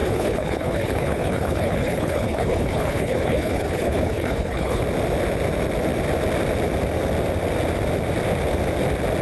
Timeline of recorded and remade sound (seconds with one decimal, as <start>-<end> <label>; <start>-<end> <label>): 0.0-4.8 remade; 4.8-9.2 recorded